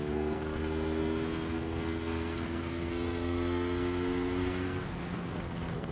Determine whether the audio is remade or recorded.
remade